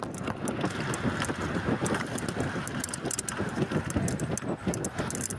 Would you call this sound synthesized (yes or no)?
no